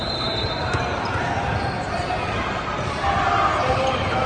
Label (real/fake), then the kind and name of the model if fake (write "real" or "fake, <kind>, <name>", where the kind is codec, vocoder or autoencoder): real